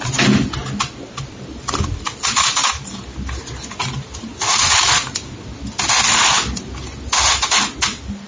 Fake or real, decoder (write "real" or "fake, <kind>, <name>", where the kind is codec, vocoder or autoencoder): real